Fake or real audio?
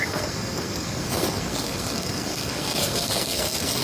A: fake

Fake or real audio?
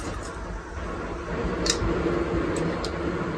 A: real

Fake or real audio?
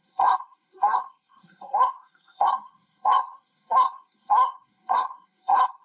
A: fake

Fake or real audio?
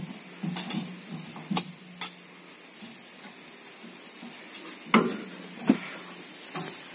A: real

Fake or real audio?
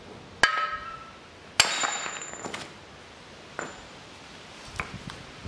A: real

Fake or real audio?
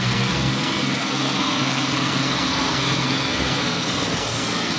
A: fake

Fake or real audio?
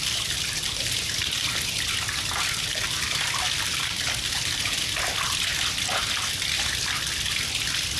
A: real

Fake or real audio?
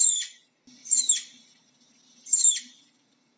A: real